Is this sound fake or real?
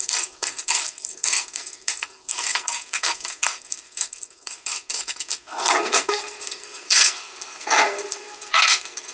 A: fake